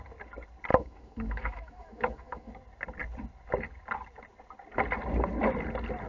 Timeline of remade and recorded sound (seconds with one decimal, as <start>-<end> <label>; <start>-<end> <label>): 0.0-0.7 recorded; 0.7-2.5 remade; 2.5-6.1 recorded